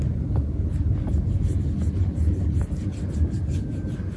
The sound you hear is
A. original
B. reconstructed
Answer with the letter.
A